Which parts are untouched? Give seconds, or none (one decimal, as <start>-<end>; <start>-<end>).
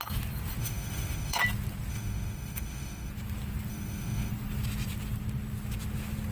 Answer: 0.0-0.6; 1.4-1.9; 3.1-3.7; 4.3-6.3